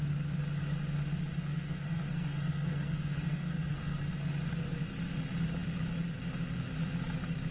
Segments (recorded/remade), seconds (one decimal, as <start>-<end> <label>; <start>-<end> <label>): 0.0-1.5 recorded; 1.5-4.3 remade; 4.3-7.5 recorded